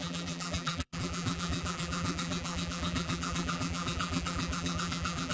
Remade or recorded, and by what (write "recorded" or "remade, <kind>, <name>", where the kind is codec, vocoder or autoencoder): remade, vocoder, BigVGAN v2